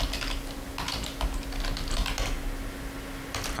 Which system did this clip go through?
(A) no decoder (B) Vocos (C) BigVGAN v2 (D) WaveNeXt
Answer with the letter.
A